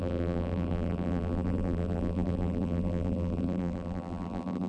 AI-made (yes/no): yes